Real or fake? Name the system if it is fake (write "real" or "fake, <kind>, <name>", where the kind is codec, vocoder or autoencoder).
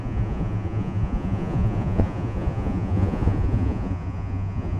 fake, vocoder, Vocos